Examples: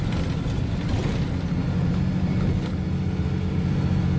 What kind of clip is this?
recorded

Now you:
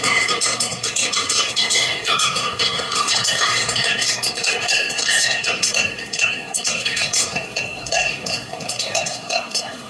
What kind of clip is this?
remade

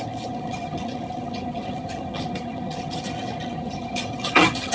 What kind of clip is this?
remade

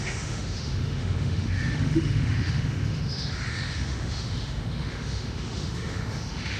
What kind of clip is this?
remade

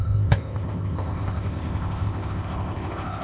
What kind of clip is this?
remade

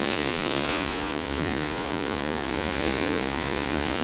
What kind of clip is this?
remade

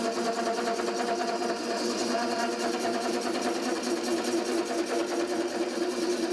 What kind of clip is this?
recorded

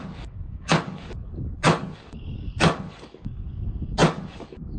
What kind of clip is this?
remade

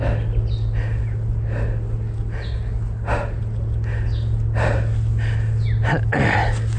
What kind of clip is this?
recorded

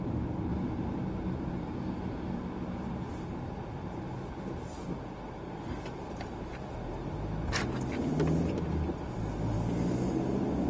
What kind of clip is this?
recorded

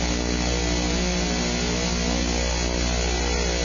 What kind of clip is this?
recorded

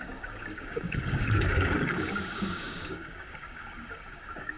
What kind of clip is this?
remade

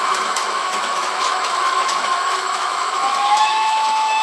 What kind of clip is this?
remade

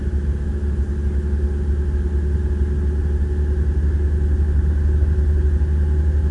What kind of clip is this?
recorded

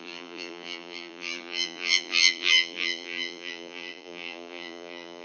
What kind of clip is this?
remade